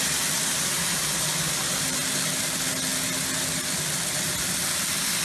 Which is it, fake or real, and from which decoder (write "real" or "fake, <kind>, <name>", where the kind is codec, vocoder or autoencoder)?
real